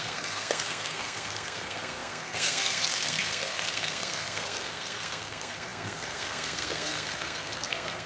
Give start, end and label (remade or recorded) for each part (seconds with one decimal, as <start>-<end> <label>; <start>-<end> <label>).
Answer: 0.0-8.1 remade